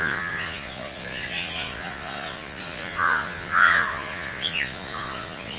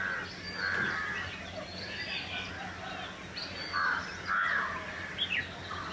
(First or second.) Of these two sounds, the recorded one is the second